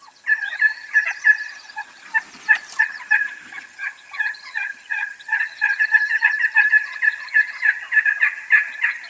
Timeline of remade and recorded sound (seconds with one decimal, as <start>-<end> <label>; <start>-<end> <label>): 0.0-2.1 remade; 2.1-2.8 recorded; 2.8-9.1 remade